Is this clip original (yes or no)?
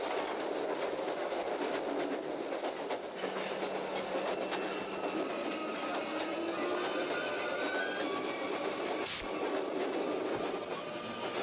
yes